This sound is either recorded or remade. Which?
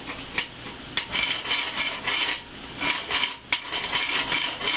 recorded